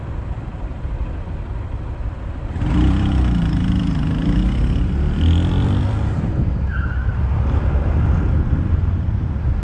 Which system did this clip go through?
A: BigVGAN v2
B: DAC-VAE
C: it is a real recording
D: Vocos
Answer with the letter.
A